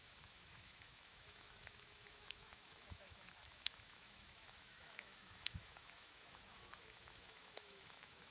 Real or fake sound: fake